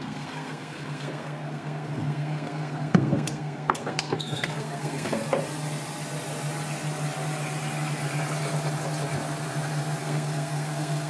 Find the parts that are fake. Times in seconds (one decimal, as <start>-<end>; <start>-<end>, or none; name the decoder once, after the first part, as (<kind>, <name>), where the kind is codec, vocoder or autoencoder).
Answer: 0.0-5.2 (codec, SNAC); 10.0-11.1